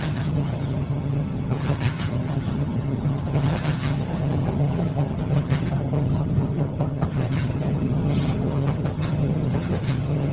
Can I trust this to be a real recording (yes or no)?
no